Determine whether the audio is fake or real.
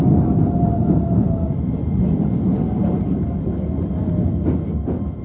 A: real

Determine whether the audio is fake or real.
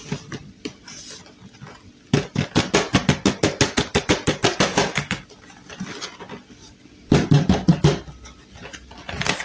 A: real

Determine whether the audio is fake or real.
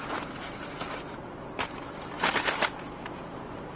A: real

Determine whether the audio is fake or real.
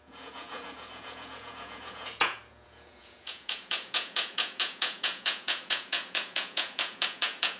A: fake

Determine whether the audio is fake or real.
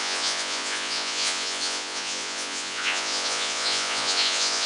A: fake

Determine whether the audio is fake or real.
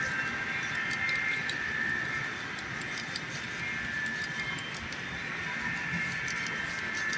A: real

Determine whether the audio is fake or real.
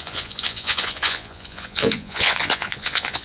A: fake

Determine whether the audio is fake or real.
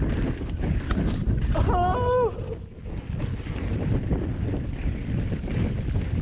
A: real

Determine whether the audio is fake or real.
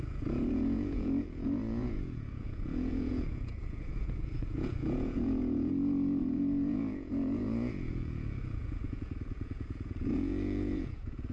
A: fake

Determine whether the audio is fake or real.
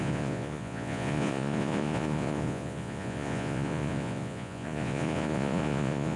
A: fake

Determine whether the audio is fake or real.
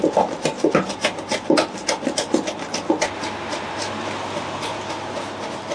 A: real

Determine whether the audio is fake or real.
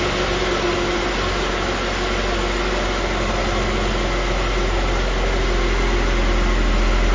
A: real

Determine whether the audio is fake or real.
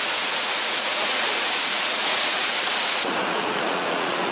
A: fake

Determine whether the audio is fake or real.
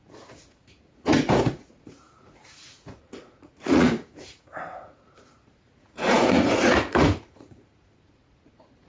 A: fake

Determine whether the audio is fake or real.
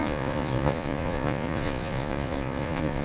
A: fake